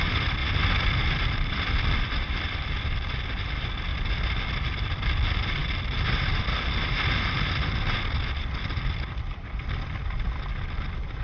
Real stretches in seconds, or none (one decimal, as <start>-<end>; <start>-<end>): 0.4-1.5; 3.9-4.7